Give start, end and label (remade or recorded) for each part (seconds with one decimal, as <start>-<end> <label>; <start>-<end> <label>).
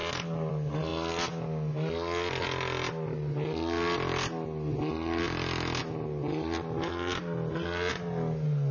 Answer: 0.0-8.7 recorded